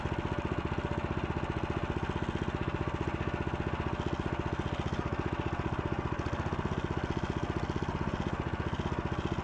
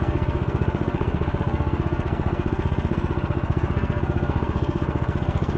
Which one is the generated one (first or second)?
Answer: second